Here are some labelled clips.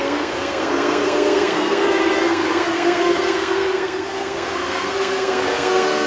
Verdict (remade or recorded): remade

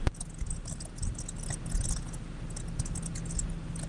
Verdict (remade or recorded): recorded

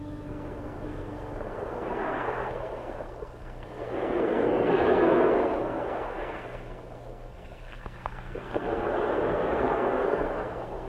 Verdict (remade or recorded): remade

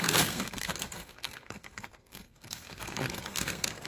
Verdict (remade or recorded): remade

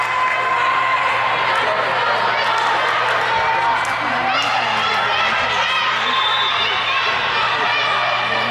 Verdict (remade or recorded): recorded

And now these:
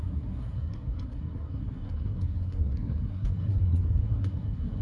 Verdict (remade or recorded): remade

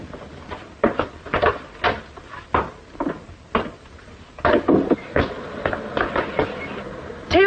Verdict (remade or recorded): recorded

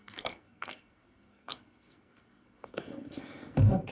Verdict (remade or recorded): remade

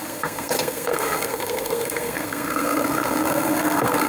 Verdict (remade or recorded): remade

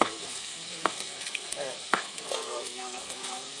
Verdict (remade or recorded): remade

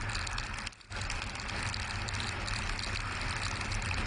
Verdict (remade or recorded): recorded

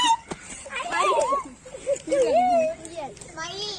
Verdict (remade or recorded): recorded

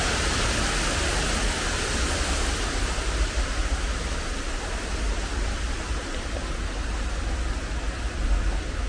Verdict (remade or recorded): recorded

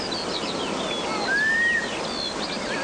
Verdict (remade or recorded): recorded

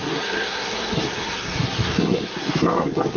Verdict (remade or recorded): remade